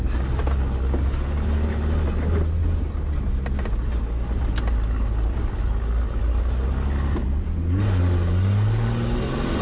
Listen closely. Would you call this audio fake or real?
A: real